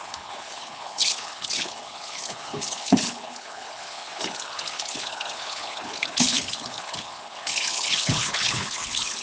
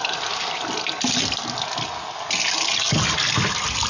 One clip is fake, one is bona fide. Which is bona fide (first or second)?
second